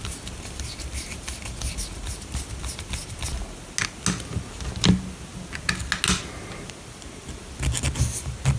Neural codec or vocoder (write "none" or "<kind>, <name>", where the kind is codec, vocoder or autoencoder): none